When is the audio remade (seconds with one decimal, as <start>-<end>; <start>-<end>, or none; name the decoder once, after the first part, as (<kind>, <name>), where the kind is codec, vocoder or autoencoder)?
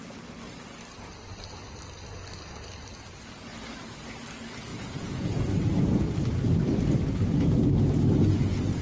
4.7-5.5 (vocoder, Vocos)